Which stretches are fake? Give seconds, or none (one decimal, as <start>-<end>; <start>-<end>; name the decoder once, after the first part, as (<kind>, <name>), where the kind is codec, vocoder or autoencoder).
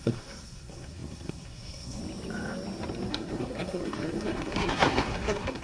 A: 0.0-2.0 (codec, SNAC); 3.1-5.6